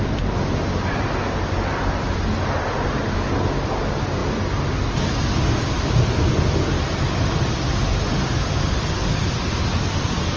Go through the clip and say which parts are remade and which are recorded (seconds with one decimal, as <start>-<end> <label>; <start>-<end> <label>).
0.0-10.4 recorded